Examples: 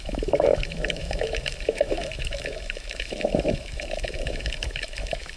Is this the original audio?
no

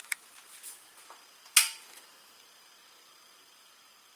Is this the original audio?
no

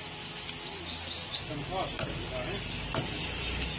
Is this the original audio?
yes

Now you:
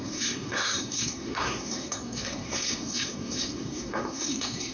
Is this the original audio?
no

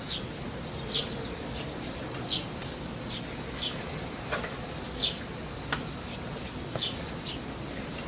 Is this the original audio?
yes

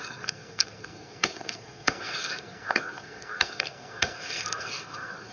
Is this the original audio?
no